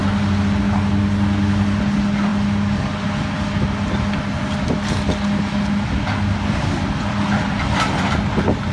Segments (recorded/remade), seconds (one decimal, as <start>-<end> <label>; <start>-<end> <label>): 0.0-8.7 recorded